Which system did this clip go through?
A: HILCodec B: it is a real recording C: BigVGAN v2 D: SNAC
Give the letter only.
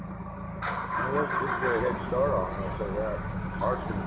B